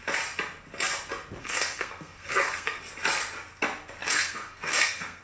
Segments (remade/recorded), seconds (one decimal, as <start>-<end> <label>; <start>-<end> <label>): 0.0-1.4 recorded; 1.4-2.8 remade; 2.8-4.0 recorded; 4.0-5.2 remade